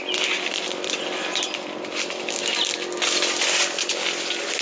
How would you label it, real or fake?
real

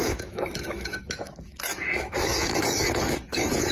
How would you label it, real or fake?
fake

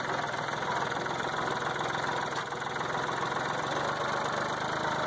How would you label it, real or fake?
real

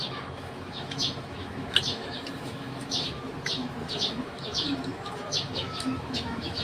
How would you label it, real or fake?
fake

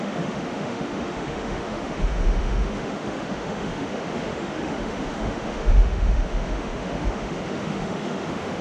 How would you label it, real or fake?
fake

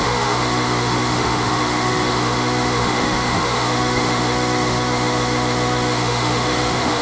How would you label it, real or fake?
fake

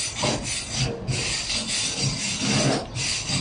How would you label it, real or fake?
real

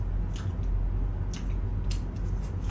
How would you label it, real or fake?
real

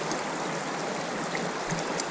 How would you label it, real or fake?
real